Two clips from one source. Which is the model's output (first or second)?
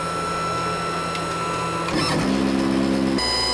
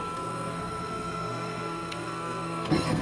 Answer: second